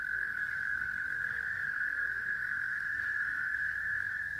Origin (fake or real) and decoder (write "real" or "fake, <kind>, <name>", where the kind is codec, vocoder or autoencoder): fake, codec, SNAC